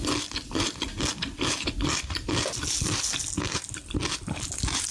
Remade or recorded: recorded